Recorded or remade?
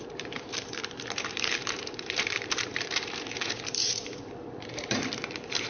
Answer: remade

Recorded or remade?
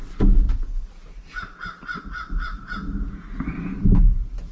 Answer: recorded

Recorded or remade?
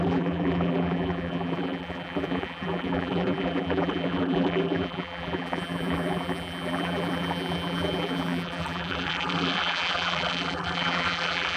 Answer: remade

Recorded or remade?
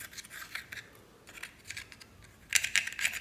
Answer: recorded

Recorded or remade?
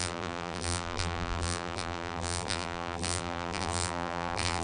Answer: remade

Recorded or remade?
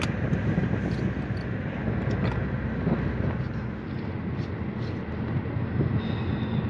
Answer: recorded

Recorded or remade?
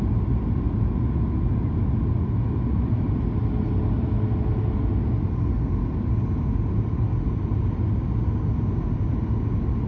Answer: recorded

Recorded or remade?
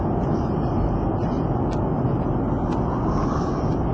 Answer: recorded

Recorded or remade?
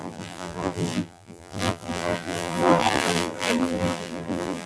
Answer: remade